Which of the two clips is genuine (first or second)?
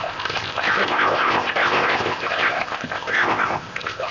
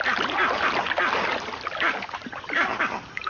second